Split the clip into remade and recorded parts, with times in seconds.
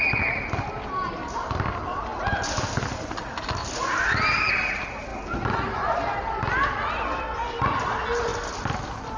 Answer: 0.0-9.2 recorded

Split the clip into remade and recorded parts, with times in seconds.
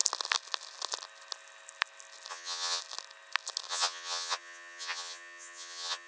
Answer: 0.0-2.3 recorded; 2.3-2.8 remade; 2.8-3.7 recorded; 3.7-6.1 remade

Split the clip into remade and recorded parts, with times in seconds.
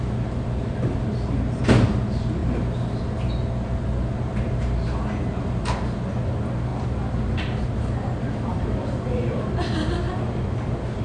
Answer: 0.0-6.7 recorded; 6.7-7.8 remade; 7.8-8.5 recorded; 8.5-9.5 remade; 9.5-11.0 recorded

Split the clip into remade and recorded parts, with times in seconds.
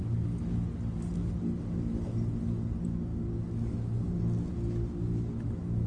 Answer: 0.0-5.9 recorded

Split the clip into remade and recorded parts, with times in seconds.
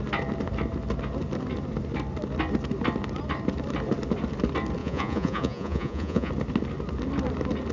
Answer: 0.0-4.8 recorded; 4.8-6.3 remade; 6.3-7.7 recorded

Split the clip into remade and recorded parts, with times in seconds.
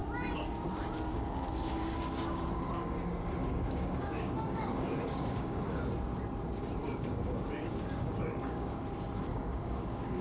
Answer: 0.0-1.1 recorded; 1.1-5.8 remade; 5.8-6.8 recorded; 6.8-8.8 remade; 8.8-9.3 recorded; 9.3-10.2 remade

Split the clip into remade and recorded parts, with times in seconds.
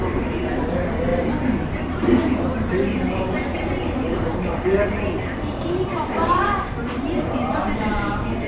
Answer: 0.0-8.5 remade